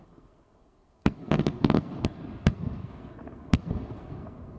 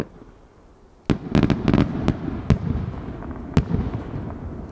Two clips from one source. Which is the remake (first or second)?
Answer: first